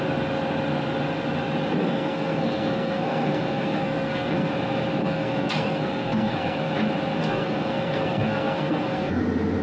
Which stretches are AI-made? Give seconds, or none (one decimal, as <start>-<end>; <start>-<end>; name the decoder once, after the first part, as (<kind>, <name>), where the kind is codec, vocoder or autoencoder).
1.8-4.5 (codec, SNAC); 5.0-6.7; 7.2-9.2